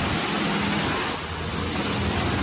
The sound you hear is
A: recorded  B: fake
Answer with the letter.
A